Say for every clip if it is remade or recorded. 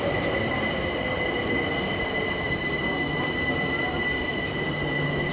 recorded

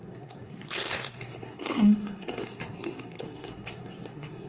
remade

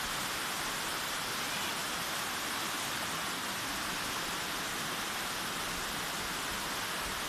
recorded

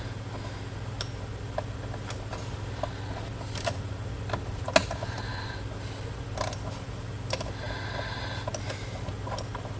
recorded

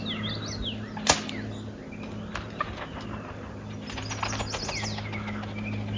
recorded